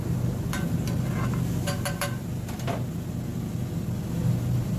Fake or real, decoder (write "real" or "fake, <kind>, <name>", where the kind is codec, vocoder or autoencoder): real